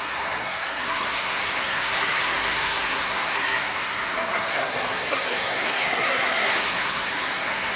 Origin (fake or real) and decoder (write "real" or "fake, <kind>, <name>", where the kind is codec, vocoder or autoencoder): fake, codec, SNAC